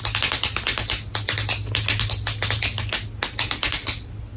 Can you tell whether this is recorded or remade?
recorded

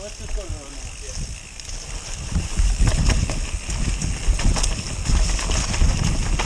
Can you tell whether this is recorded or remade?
recorded